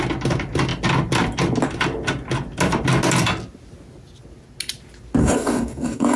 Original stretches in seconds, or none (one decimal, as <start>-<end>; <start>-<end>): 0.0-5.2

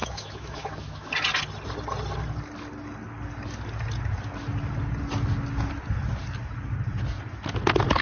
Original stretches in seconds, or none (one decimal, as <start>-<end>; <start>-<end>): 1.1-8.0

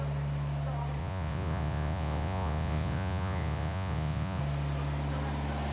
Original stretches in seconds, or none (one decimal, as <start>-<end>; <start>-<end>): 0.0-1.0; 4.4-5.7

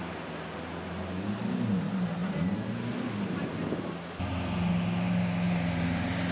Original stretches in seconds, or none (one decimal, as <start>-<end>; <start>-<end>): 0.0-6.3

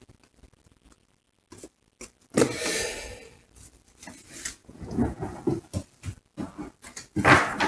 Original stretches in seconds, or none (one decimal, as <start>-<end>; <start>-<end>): 0.0-4.6; 5.2-7.7